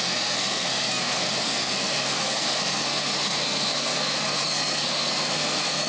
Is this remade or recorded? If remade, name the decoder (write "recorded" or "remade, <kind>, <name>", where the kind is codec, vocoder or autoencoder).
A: remade, codec, SNAC